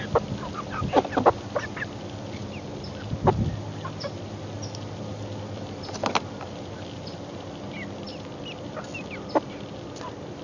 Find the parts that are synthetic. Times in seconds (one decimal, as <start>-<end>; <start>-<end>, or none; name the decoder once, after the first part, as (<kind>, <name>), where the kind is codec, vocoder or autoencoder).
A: none